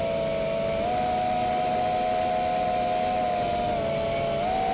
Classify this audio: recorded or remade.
recorded